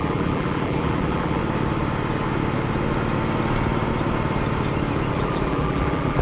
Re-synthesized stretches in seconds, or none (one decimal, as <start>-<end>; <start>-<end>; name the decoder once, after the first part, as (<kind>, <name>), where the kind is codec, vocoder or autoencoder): 0.0-1.4 (vocoder, BigVGAN v2); 5.1-6.2